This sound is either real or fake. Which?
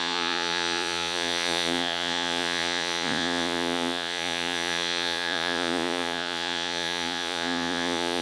fake